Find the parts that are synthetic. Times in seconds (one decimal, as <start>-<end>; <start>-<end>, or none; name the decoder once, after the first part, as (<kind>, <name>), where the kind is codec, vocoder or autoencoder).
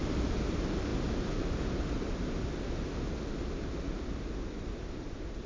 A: none